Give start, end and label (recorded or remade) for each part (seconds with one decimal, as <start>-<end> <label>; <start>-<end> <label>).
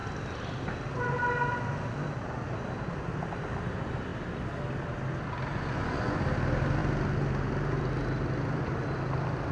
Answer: 0.0-5.5 recorded; 5.5-6.2 remade; 6.2-9.5 recorded